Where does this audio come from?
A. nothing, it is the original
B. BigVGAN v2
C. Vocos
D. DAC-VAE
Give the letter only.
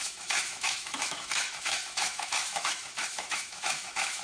D